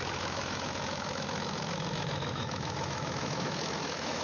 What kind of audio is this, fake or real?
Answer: fake